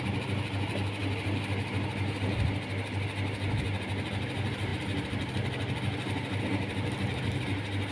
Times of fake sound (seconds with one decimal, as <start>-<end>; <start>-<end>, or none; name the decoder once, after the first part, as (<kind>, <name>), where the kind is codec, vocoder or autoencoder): none